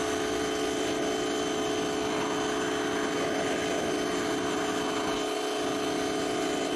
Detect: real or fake real